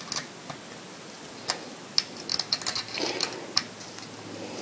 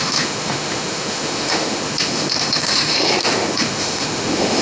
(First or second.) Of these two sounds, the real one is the first